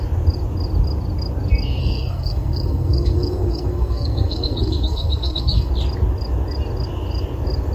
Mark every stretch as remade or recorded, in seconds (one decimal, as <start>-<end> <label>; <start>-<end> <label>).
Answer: 0.0-1.8 recorded; 1.8-5.7 remade; 5.7-7.7 recorded